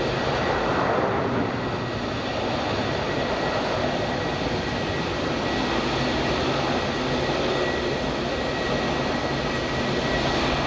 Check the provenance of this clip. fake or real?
real